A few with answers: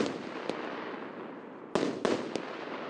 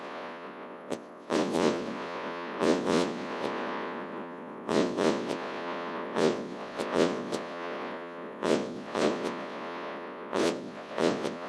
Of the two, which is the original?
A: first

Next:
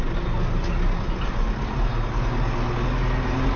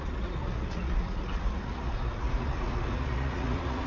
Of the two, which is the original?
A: first